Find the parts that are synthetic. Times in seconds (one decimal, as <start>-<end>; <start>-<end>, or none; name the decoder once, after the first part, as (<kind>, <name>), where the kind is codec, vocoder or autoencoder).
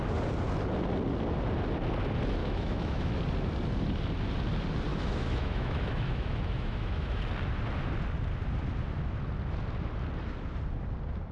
2.4-3.2 (autoencoder, DAC-VAE); 4.9-7.2